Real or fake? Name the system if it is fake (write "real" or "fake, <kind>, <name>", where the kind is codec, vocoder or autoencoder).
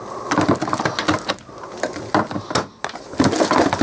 real